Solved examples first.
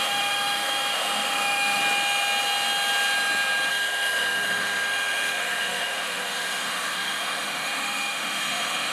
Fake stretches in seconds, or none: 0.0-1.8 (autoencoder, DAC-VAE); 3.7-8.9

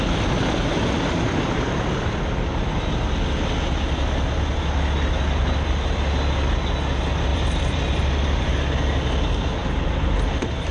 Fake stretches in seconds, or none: 7.3-8.5 (vocoder, BigVGAN v2); 9.6-10.7

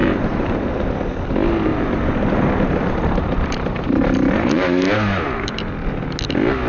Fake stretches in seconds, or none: 0.0-0.7 (vocoder, BigVGAN v2); 1.7-5.7

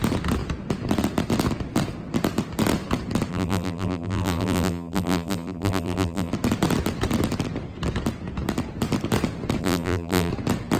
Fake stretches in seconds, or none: 3.3-6.3 (vocoder, BigVGAN v2); 9.6-10.3

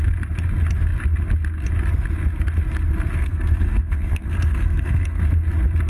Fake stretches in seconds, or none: 3.2-5.2 (codec, SNAC)